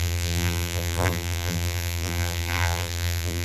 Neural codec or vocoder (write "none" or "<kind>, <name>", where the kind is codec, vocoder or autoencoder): vocoder, BigVGAN v2